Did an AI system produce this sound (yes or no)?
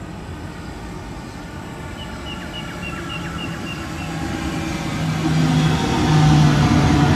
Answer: no